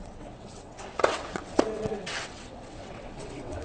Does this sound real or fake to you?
fake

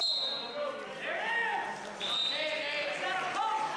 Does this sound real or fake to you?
real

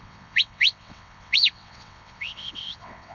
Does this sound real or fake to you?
fake